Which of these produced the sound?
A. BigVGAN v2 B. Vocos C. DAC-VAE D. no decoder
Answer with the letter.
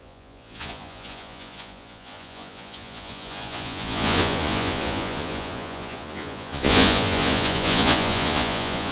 B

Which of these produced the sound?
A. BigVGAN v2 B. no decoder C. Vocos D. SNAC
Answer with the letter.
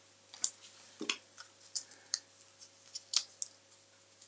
B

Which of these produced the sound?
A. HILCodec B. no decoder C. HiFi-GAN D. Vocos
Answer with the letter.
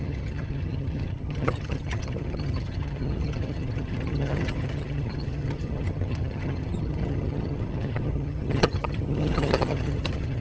C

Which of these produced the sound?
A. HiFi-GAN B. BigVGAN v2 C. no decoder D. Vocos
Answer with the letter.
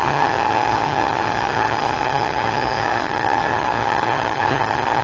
A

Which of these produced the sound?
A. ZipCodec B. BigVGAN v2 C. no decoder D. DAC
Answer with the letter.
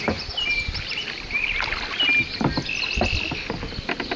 C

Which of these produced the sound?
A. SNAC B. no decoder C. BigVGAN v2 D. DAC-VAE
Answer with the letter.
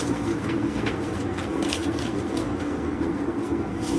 A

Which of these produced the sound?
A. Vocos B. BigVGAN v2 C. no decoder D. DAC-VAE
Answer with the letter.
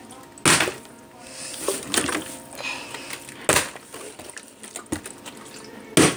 C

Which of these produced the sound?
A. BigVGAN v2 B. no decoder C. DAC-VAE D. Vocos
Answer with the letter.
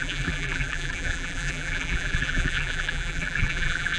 A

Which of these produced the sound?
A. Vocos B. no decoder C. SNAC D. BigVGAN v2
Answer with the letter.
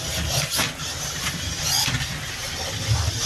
B